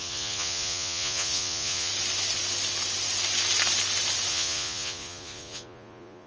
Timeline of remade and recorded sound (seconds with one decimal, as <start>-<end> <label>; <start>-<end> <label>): 0.0-1.9 remade; 1.9-4.3 recorded; 4.3-6.3 remade